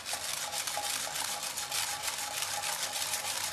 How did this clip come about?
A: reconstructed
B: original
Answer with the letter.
B